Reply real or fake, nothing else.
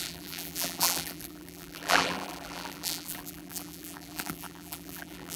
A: fake